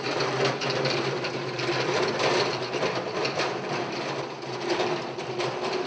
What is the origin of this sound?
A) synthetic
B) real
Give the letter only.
A